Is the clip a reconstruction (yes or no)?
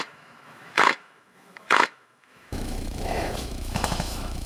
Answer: yes